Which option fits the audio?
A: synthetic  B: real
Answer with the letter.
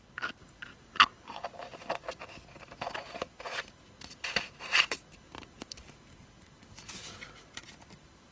B